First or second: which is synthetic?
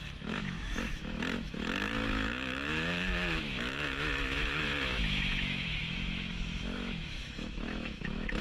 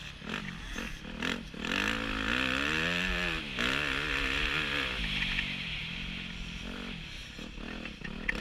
first